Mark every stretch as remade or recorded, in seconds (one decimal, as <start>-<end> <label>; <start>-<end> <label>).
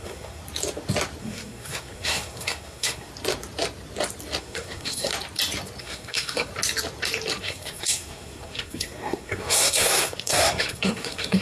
0.0-0.4 remade; 0.4-1.2 recorded; 1.2-3.1 remade; 3.1-4.4 recorded; 4.4-5.1 remade; 5.1-5.8 recorded; 5.8-6.5 remade; 6.5-7.4 recorded; 7.4-11.4 remade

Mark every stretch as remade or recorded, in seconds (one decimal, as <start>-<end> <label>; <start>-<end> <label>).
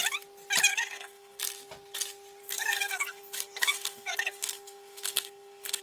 0.0-0.7 recorded; 0.7-1.4 remade; 1.4-2.4 recorded; 2.4-5.8 remade